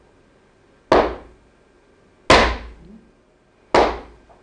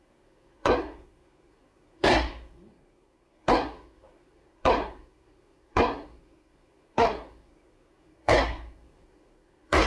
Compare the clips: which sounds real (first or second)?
first